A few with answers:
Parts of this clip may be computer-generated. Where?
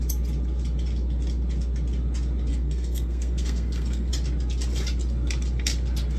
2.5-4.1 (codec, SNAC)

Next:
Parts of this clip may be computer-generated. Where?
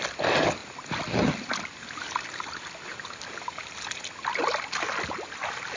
none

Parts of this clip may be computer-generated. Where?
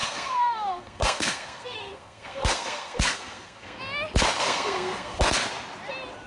0.0-3.8 (codec, SNAC); 4.4-5.2